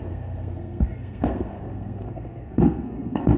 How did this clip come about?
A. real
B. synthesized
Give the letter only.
B